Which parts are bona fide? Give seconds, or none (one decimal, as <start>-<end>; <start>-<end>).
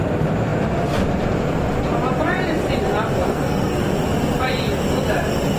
0.0-3.2; 3.8-5.6